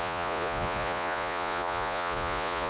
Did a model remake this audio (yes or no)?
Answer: yes